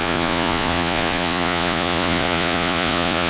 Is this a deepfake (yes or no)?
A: yes